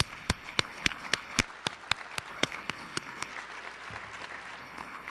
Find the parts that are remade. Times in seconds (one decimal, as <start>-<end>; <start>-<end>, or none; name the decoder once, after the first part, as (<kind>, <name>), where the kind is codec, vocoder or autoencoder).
0.0-1.4 (codec, HILCodec); 2.3-3.3; 4.6-5.1